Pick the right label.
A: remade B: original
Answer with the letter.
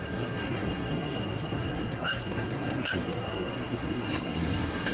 A